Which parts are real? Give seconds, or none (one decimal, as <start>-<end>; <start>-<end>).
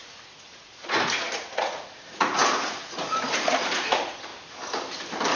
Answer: 4.3-5.4